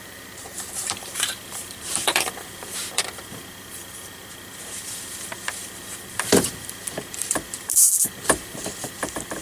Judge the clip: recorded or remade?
remade